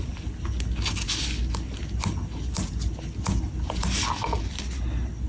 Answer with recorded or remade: recorded